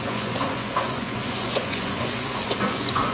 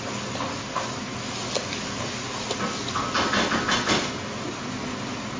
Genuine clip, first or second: second